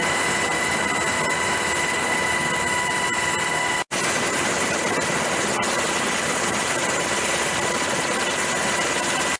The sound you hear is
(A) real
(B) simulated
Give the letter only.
A